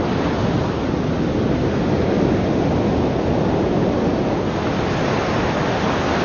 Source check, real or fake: real